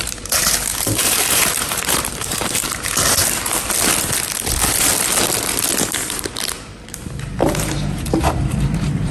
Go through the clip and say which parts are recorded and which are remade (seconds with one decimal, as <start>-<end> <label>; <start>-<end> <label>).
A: 0.0-3.2 remade; 3.2-4.5 recorded; 4.5-4.9 remade; 4.9-5.7 recorded; 5.7-9.1 remade